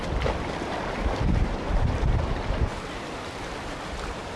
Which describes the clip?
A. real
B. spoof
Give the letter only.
B